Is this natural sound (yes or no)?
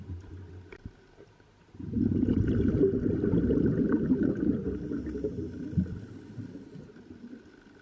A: yes